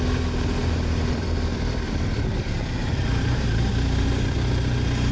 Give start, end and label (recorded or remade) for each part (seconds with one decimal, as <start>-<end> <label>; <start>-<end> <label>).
0.0-0.6 recorded; 0.6-3.7 remade; 3.7-5.1 recorded